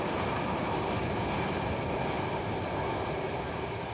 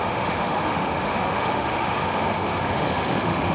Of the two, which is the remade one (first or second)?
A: second